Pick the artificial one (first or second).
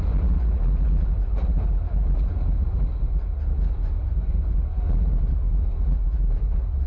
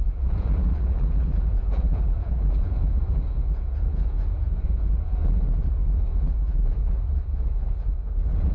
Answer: second